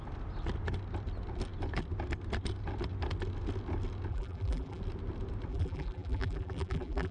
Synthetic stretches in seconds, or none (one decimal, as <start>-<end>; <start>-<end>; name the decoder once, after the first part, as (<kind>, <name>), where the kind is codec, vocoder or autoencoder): 4.1-4.8 (vocoder, BigVGAN v2); 5.5-7.1